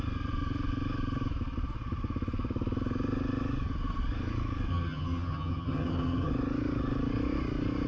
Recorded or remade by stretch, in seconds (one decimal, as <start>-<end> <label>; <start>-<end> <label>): 0.0-4.7 recorded; 4.7-6.3 remade; 6.3-7.9 recorded